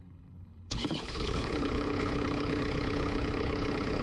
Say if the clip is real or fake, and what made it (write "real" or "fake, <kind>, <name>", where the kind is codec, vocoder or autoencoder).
fake, codec, HILCodec